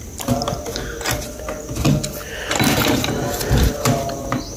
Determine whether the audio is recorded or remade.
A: recorded